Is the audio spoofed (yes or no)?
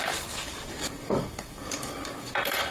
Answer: yes